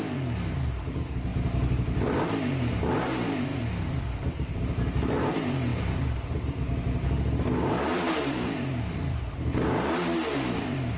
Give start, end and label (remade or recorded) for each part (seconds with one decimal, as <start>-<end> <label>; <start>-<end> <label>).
0.0-1.3 recorded; 1.3-2.0 remade; 2.0-3.5 recorded; 3.5-4.6 remade; 4.6-5.7 recorded; 5.7-6.6 remade; 6.6-7.9 recorded; 7.9-9.2 remade; 9.2-11.0 recorded